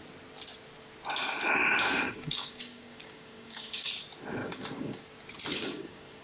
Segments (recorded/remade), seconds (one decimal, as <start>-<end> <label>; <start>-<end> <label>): 0.0-1.6 recorded; 1.6-3.9 remade; 3.9-4.4 recorded; 4.4-5.0 remade; 5.0-5.5 recorded; 5.5-6.2 remade